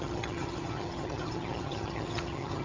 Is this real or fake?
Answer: fake